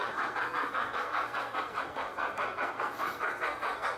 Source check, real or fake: fake